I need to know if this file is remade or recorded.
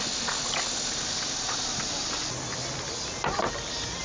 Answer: recorded